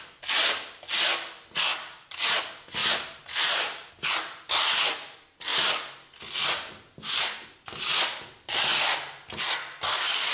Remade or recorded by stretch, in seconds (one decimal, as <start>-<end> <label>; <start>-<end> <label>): 0.0-2.8 recorded; 2.8-3.9 remade; 3.9-10.3 recorded